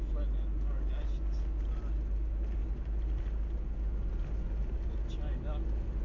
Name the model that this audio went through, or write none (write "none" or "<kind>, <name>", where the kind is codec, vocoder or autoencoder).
none